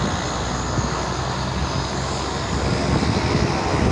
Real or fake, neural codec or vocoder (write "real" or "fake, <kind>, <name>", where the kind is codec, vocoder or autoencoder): real